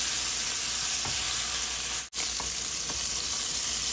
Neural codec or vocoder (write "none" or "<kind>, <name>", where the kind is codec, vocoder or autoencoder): none